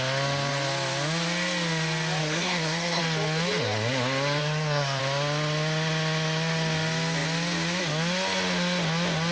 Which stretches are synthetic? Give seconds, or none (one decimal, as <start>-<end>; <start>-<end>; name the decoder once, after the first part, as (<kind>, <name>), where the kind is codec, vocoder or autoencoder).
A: 2.2-3.0 (codec, SNAC); 4.4-5.0

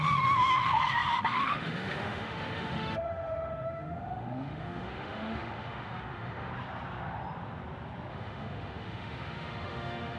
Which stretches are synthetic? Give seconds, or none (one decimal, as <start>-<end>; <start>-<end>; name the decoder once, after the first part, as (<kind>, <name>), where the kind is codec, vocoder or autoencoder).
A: 0.0-6.5 (autoencoder, DAC-VAE); 8.1-10.2

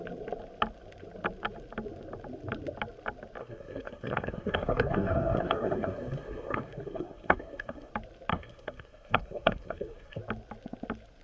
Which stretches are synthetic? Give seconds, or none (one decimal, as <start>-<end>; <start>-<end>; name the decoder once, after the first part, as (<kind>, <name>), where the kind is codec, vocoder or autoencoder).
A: 3.4-7.9 (codec, SNAC); 8.3-10.2

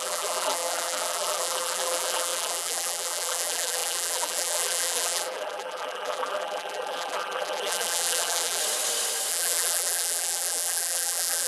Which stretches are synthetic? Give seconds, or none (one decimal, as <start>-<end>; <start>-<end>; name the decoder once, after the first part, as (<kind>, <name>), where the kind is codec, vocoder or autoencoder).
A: 0.0-8.6 (vocoder, BigVGAN v2); 9.3-11.5

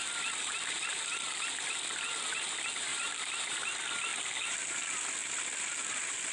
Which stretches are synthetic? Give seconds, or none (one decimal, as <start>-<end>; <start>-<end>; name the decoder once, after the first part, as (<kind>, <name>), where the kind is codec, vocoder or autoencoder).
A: 0.5-1.5 (vocoder, BigVGAN v2); 2.9-3.6

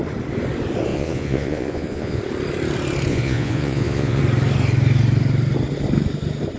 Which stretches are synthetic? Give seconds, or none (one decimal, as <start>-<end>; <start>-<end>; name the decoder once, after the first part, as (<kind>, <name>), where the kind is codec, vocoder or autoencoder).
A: 0.9-2.2 (vocoder, Vocos); 3.1-4.2

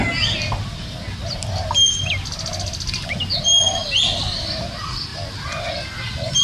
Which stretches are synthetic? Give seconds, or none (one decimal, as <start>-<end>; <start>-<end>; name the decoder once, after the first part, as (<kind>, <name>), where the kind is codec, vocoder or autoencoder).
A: none

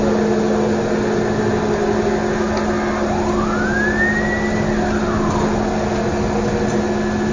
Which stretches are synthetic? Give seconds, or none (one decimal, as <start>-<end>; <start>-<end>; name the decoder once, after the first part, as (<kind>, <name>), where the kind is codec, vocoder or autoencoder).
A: none